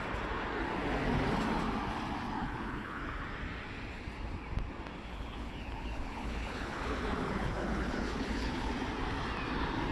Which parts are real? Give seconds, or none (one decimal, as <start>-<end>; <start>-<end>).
0.0-2.4; 3.0-5.1; 8.7-9.9